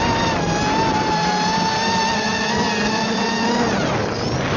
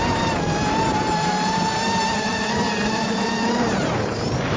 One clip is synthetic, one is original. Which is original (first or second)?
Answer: first